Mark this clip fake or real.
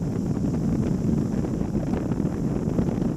real